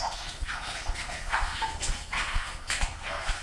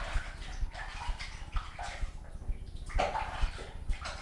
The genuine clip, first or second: second